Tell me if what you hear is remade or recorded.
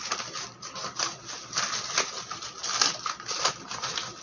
recorded